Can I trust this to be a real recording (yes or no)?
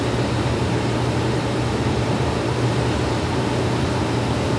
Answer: no